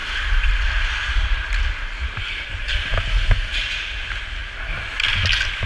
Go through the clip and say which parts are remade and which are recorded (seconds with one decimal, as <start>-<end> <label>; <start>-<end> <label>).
0.0-5.7 recorded